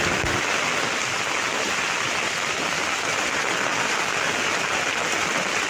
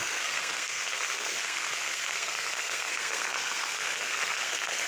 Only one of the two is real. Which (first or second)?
first